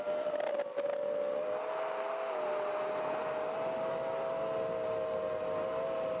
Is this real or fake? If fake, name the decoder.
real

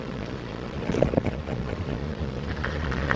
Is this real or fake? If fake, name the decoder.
fake, vocoder, Vocos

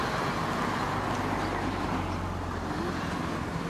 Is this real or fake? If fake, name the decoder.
real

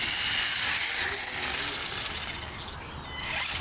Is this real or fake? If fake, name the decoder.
real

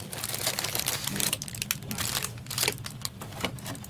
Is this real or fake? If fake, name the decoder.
fake, vocoder, BigVGAN v2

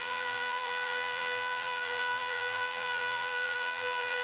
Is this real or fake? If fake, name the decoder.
fake, vocoder, BigVGAN v2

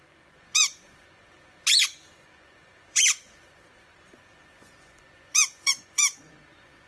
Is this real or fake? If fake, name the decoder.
fake, vocoder, Vocos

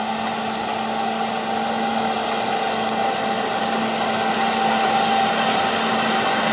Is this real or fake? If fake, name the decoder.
real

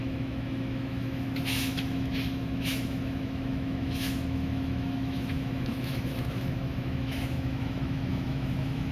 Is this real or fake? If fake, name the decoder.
fake, autoencoder, DAC-VAE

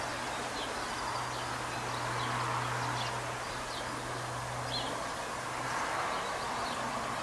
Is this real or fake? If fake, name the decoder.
real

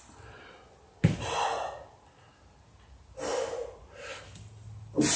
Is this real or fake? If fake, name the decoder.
real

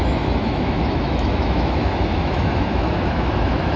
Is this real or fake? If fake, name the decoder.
fake, autoencoder, DAC-VAE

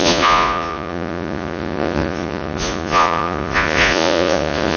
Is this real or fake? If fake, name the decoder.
fake, vocoder, Vocos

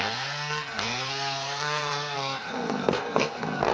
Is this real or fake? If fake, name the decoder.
fake, codec, SNAC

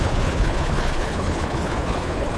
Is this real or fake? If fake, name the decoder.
fake, codec, HILCodec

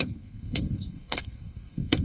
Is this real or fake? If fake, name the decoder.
fake, codec, SNAC